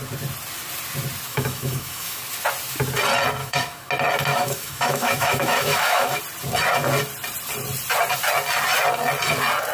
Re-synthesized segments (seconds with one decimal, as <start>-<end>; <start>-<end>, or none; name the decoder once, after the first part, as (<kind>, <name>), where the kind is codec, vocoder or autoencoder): 1.3-2.2 (autoencoder, DAC-VAE); 3.4-3.9; 4.3-6.2